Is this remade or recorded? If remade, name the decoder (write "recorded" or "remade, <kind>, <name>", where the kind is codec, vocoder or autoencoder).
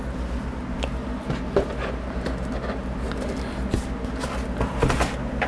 recorded